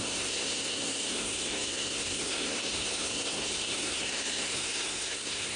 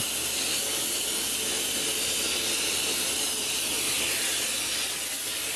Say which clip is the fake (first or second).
first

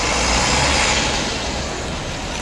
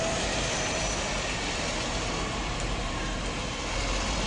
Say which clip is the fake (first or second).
second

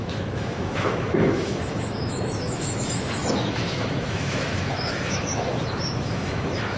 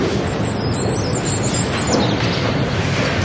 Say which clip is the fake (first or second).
first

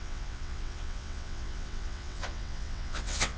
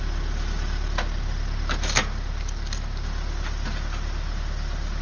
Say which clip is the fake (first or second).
first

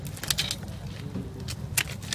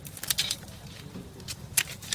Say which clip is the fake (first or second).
second